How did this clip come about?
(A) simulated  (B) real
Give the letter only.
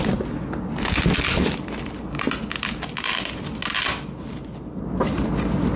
B